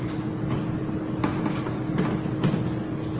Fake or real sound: real